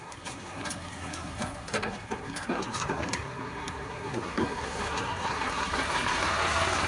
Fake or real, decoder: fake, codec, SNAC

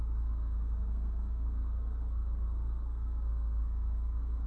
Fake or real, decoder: fake, codec, SNAC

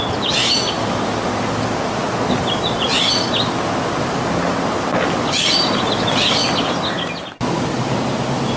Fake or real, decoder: real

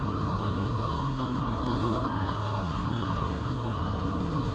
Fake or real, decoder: fake, codec, SNAC